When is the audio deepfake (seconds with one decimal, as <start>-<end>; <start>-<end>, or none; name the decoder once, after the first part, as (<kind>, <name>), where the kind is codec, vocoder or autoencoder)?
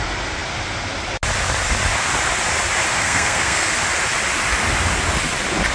2.9-3.7 (codec, SNAC)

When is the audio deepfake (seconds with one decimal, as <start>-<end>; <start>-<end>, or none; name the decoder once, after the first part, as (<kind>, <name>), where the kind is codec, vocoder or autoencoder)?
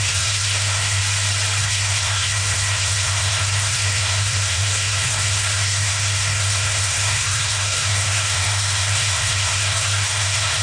0.0-1.0 (codec, SNAC); 1.6-10.6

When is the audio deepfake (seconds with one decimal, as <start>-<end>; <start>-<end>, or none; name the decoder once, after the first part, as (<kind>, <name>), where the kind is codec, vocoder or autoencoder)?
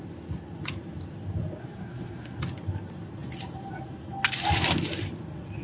1.6-2.4 (codec, SNAC)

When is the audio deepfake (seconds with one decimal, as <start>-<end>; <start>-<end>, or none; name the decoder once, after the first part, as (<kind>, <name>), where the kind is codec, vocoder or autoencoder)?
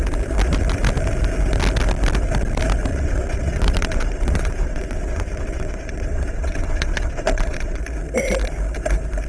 2.9-7.8 (vocoder, WaveNeXt)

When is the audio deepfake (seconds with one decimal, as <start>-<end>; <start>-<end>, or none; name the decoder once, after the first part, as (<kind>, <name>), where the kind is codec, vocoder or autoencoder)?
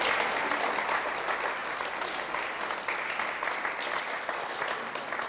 none